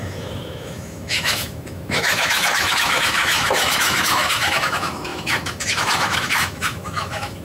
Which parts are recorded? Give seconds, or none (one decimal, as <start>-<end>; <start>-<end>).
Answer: none